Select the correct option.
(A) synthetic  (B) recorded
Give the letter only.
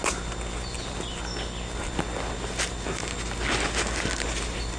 B